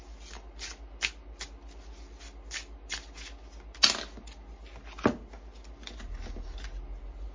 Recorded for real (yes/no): yes